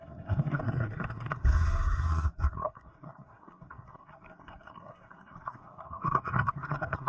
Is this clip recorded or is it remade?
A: remade